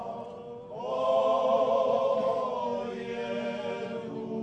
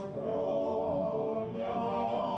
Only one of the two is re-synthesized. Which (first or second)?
second